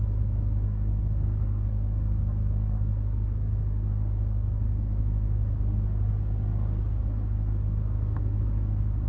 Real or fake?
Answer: fake